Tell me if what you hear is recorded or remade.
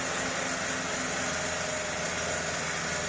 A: recorded